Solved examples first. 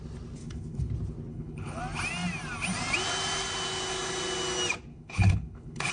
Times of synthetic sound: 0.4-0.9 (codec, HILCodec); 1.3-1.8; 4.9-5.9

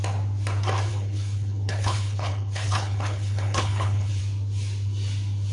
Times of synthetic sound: 0.9-4.2 (codec, HILCodec)

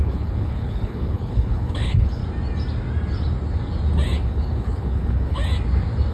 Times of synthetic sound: 0.0-2.2 (codec, HILCodec); 4.2-5.4

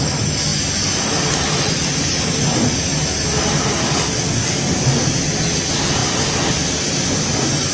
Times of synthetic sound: none

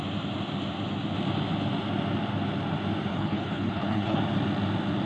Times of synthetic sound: 3.1-4.2 (codec, HILCodec)